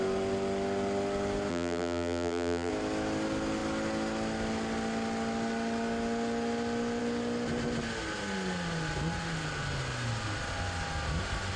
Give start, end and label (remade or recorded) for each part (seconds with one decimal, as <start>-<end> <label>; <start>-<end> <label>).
0.0-1.5 recorded; 1.5-2.7 remade; 2.7-11.6 recorded